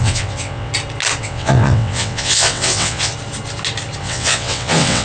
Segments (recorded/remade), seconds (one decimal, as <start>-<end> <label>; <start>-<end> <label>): 0.0-0.7 remade; 0.7-1.2 recorded; 1.2-3.1 remade; 3.1-4.0 recorded; 4.0-5.0 remade